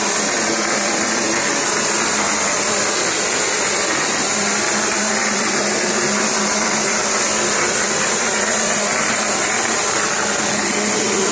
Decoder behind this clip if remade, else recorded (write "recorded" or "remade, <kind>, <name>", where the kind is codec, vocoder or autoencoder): remade, vocoder, BigVGAN v2